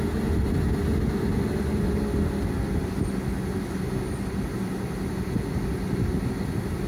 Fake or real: real